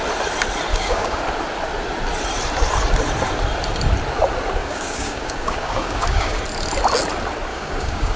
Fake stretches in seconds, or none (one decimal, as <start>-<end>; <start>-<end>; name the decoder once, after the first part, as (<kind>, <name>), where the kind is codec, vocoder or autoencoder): 0.7-1.2 (codec, DAC); 4.6-6.4; 7.5-8.2